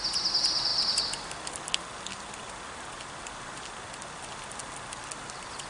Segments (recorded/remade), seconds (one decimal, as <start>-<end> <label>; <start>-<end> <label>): 0.0-5.7 recorded